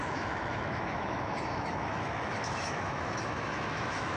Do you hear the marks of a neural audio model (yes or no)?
yes